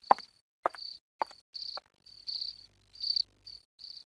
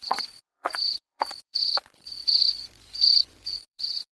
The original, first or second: first